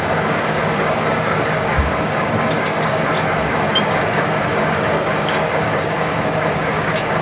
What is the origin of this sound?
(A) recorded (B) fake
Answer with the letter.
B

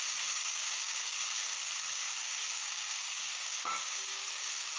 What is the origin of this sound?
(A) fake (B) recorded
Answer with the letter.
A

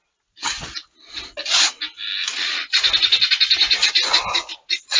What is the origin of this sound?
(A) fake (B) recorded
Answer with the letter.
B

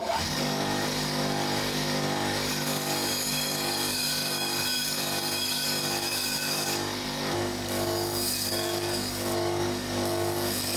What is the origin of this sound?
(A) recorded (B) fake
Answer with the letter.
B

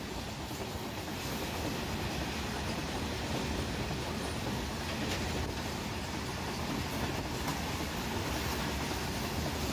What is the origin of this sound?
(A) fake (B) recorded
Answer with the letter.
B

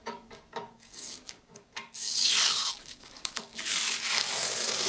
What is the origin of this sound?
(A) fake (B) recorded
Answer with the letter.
A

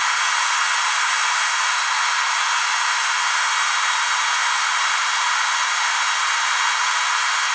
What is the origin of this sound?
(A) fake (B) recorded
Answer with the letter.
B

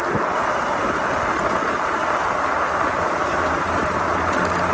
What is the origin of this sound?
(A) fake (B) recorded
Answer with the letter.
B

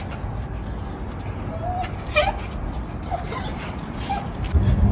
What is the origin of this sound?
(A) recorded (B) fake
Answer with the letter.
A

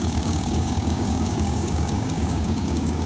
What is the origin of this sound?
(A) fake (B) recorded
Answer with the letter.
A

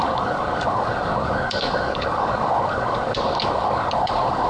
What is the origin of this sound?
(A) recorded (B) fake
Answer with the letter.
B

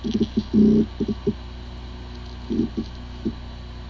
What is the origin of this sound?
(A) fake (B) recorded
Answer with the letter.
B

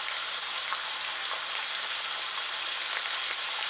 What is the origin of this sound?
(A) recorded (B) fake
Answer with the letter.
A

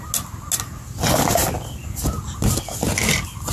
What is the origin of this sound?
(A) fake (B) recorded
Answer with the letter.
B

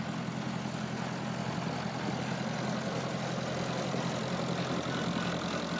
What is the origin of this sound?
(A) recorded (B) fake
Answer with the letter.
A